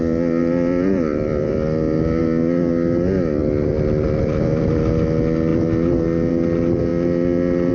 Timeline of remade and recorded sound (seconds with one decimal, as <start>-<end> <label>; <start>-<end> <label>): 0.0-0.4 recorded; 0.4-2.2 remade; 2.2-3.4 recorded; 3.4-4.7 remade; 4.7-7.7 recorded

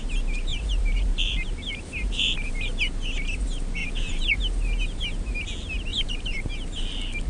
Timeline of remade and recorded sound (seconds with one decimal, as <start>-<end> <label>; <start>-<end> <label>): 0.0-0.5 recorded; 0.5-2.5 remade; 2.5-3.8 recorded; 3.8-4.4 remade; 4.4-5.9 recorded; 5.9-6.5 remade; 6.5-7.3 recorded